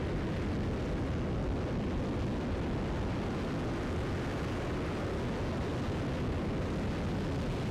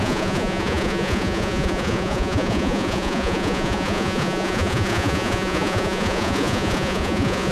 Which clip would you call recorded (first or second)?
first